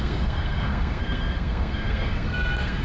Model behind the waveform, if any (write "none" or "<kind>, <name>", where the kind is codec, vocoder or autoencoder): codec, SNAC